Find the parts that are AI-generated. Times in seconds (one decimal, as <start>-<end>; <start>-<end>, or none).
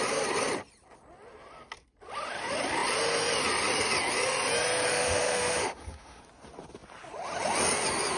4.9-6.2